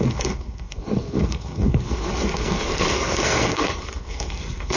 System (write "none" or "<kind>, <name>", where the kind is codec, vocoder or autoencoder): codec, SNAC